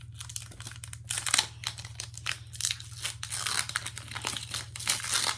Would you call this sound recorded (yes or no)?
yes